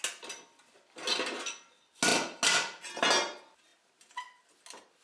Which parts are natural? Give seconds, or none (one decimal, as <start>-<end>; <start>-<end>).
0.0-5.0